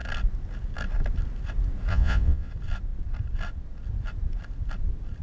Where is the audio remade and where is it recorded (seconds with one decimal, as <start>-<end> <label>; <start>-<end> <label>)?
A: 0.0-1.9 recorded; 1.9-2.5 remade; 2.5-5.2 recorded